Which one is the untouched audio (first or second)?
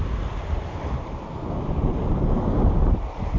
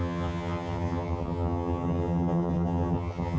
first